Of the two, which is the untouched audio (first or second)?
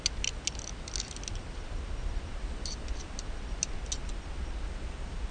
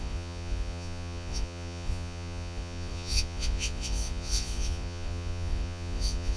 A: first